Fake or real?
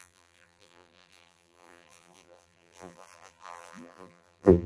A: fake